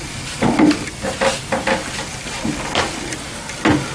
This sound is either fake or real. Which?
real